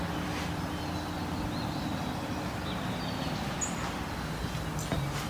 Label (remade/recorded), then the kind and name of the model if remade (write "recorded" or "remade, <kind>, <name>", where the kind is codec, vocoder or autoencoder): recorded